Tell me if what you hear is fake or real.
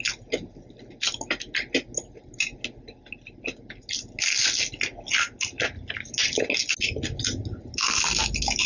real